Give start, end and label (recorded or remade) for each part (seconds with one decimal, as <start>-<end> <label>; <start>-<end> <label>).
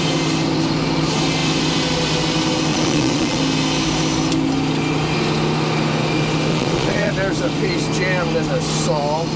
0.0-2.7 recorded; 2.7-3.4 remade; 3.4-6.5 recorded; 6.5-7.1 remade; 7.1-9.4 recorded